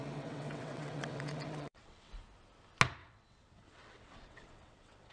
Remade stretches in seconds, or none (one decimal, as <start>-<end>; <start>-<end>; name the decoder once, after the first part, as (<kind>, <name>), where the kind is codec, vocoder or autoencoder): 0.0-2.1 (vocoder, WaveNeXt); 3.0-5.1